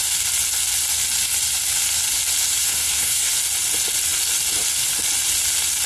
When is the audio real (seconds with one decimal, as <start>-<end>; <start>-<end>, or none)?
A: 0.0-2.6; 3.3-5.9